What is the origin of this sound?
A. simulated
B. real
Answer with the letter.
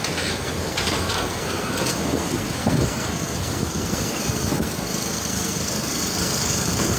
A